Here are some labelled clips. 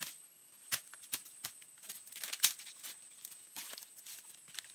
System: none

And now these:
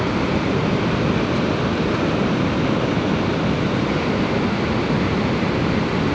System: none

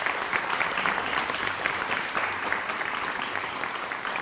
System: vocoder, BigVGAN v2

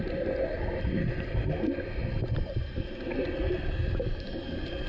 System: none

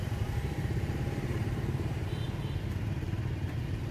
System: vocoder, BigVGAN v2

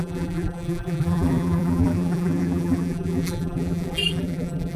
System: vocoder, BigVGAN v2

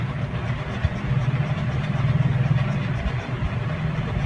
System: vocoder, BigVGAN v2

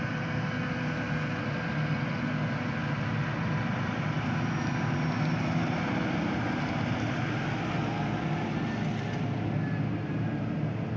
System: none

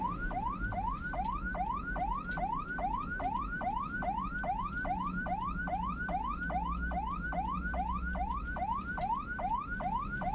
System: none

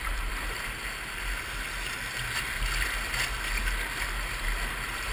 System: none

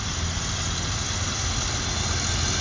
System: none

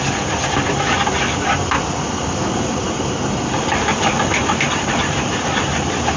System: vocoder, BigVGAN v2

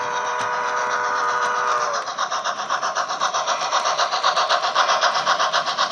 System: vocoder, BigVGAN v2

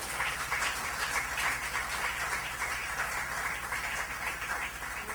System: vocoder, BigVGAN v2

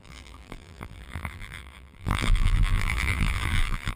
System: vocoder, BigVGAN v2